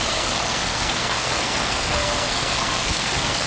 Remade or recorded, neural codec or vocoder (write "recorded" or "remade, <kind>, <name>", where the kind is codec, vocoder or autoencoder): remade, codec, SNAC